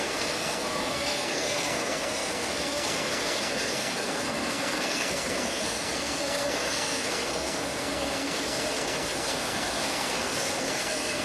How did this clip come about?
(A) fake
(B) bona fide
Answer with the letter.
A